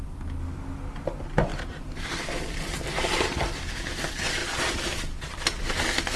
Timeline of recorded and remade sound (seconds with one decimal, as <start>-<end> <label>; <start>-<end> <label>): 0.0-1.5 recorded; 1.5-3.7 remade; 3.7-4.4 recorded; 4.4-5.3 remade; 5.3-6.2 recorded